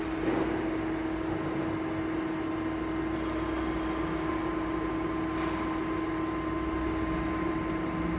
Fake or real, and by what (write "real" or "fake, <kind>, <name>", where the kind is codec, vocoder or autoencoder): real